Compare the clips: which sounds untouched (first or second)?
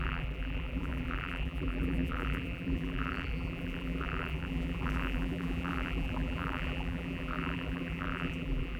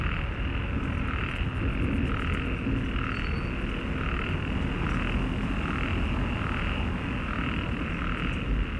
second